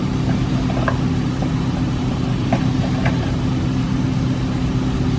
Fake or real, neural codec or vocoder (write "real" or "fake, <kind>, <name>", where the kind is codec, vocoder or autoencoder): fake, vocoder, BigVGAN v2